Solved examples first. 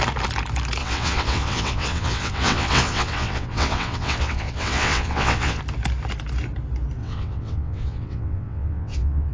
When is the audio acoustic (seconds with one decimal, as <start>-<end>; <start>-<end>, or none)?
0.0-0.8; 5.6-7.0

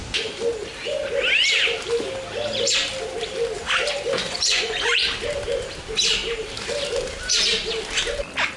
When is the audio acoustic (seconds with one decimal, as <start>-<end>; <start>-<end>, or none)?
0.0-4.2; 5.0-8.6

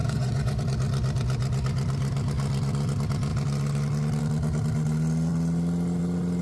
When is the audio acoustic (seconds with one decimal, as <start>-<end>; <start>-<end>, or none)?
0.6-6.4

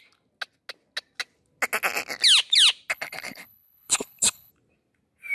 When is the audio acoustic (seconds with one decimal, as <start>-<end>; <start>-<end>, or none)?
0.0-2.9; 4.5-5.3

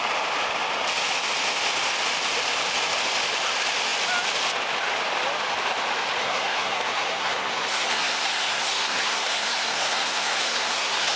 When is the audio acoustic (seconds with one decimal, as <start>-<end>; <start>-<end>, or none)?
0.0-6.2

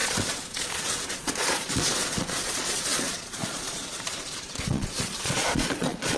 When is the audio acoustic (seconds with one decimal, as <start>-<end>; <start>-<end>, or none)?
none

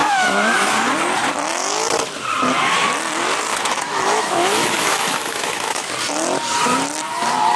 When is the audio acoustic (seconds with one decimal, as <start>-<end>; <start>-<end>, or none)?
0.7-3.5; 5.9-7.6

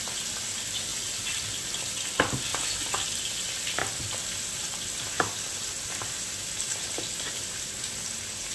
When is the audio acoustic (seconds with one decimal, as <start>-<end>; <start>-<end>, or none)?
0.0-8.5